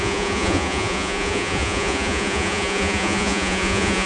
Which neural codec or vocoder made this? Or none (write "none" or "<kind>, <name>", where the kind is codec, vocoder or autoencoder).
vocoder, Vocos